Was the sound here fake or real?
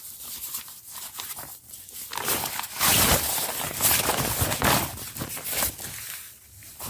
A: real